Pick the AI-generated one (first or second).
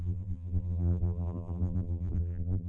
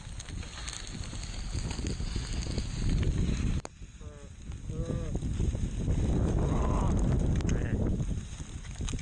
first